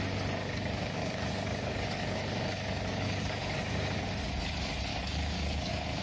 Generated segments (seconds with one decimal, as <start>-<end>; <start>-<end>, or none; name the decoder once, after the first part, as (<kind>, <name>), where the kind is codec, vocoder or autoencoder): 0.4-4.0 (codec, DAC); 4.9-6.0